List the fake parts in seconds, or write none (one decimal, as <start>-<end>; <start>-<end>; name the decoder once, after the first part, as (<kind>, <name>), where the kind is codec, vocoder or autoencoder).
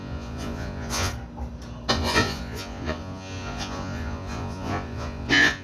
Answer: 0.0-1.1 (vocoder, Vocos); 1.9-5.6